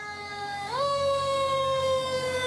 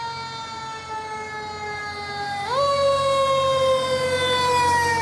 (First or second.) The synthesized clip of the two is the first